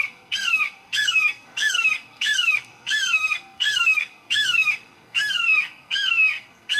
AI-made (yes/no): yes